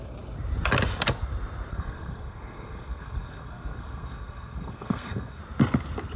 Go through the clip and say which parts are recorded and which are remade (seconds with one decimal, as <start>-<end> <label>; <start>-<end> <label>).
0.0-1.7 recorded; 1.7-5.4 remade; 5.4-6.2 recorded

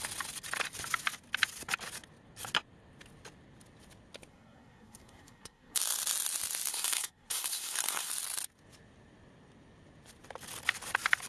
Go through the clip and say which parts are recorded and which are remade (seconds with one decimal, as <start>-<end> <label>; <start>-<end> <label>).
0.0-4.3 recorded; 4.3-5.8 remade; 5.8-6.7 recorded; 6.7-8.1 remade; 8.1-11.3 recorded

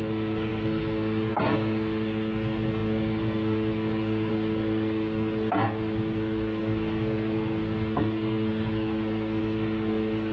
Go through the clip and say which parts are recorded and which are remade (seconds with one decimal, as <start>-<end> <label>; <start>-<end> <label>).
0.0-10.3 remade